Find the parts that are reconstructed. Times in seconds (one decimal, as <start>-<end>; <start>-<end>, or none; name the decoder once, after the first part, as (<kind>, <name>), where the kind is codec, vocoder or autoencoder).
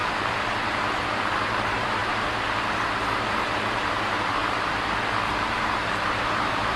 0.5-4.4 (vocoder, BigVGAN v2); 5.3-6.8